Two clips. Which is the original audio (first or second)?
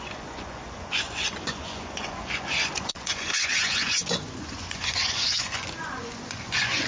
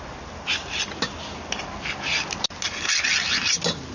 second